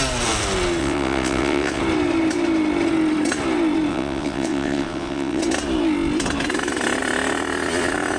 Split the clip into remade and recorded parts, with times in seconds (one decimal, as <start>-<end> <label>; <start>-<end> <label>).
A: 0.0-0.8 recorded; 0.8-1.8 remade; 1.8-3.9 recorded; 3.9-5.4 remade; 5.4-8.2 recorded